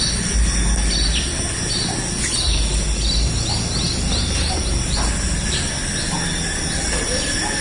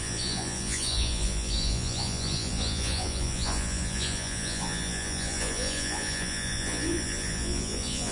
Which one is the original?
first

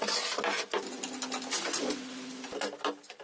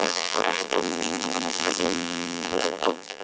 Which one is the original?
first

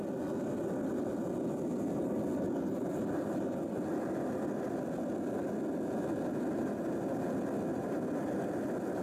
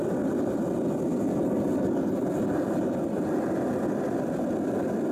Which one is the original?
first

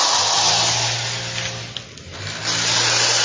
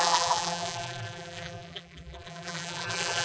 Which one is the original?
first